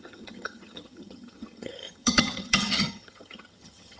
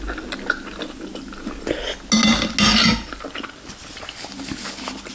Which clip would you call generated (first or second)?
first